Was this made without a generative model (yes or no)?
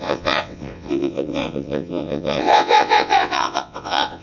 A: no